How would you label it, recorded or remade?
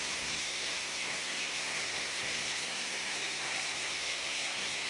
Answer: remade